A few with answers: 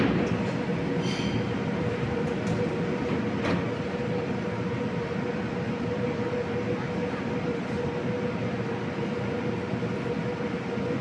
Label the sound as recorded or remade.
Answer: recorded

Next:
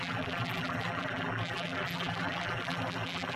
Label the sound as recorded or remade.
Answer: remade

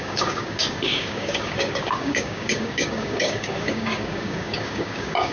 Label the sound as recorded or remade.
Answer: remade